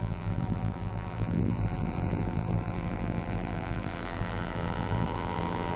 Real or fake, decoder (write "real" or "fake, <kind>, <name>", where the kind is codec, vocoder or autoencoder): fake, vocoder, BigVGAN v2